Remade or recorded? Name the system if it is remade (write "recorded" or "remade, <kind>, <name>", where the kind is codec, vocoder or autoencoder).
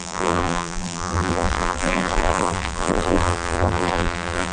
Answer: remade, vocoder, BigVGAN v2